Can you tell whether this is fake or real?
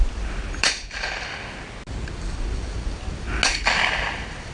real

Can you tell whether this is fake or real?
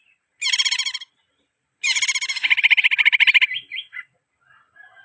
real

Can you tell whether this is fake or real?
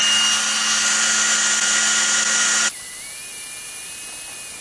real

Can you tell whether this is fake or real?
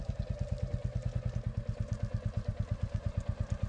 real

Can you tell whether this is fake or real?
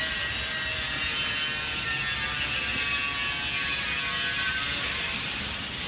real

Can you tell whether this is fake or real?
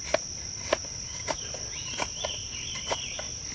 real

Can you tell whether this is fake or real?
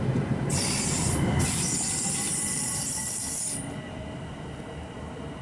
fake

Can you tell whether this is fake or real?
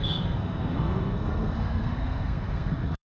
fake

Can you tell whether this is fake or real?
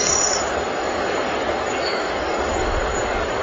fake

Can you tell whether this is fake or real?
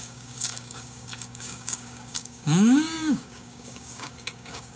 fake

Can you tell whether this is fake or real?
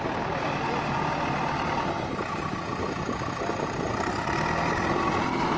real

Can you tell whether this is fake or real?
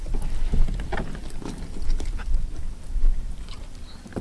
real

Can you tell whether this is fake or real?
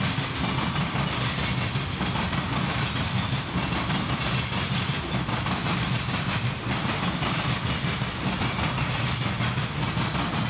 real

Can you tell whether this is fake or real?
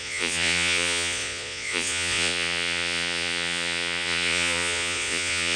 fake